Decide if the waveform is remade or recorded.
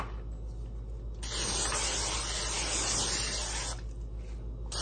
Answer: recorded